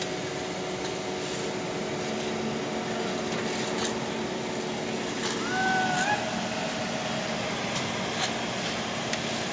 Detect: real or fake real